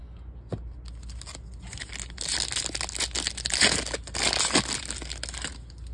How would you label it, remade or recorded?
recorded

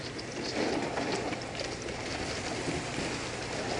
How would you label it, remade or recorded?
recorded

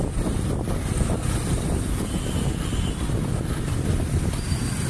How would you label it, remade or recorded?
recorded